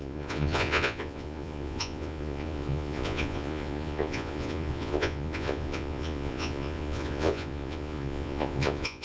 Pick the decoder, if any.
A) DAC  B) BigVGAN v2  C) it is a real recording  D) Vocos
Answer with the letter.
D